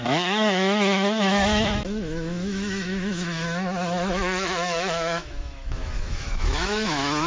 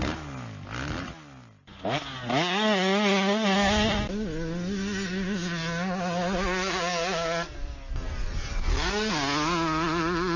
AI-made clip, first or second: first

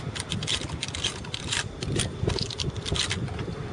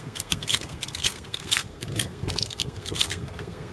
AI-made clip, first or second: second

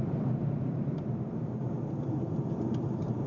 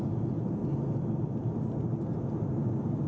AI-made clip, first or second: first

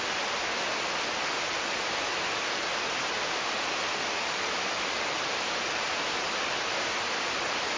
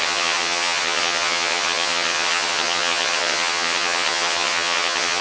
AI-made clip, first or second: second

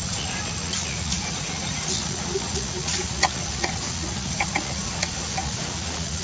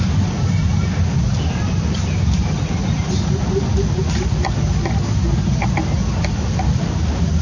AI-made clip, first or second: first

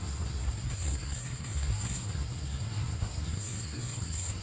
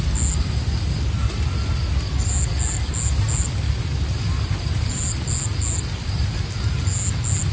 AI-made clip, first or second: first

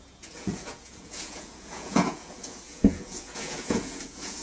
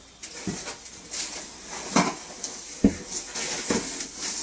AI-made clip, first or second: first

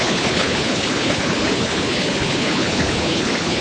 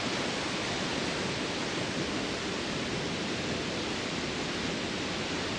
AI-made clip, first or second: first